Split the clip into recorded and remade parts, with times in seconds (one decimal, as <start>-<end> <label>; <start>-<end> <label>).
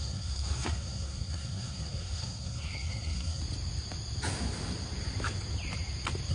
0.0-3.4 remade; 3.4-6.3 recorded